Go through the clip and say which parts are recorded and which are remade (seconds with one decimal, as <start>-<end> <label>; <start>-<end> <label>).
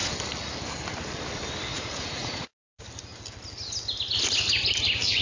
0.0-1.7 recorded; 1.7-2.8 remade; 2.8-5.2 recorded